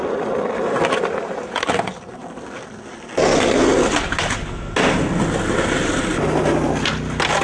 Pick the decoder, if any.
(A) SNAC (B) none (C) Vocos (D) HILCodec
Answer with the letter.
B